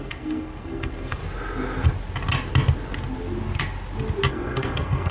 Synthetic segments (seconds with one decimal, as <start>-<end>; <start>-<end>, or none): 0.0-1.2; 4.3-5.1